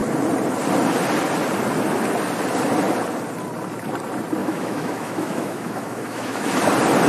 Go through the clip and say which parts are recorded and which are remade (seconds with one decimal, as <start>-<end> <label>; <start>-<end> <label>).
0.0-4.4 recorded; 4.4-6.5 remade; 6.5-7.1 recorded